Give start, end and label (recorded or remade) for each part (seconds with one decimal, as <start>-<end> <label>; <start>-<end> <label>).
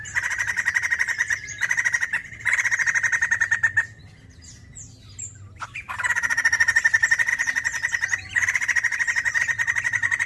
0.0-10.3 recorded